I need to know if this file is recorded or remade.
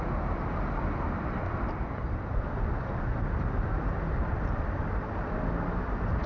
recorded